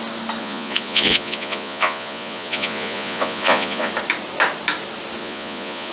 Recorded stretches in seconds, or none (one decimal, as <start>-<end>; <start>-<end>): 0.0-0.4; 3.9-5.2